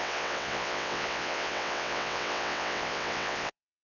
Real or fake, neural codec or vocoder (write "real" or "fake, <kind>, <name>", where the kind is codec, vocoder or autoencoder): fake, vocoder, WaveNeXt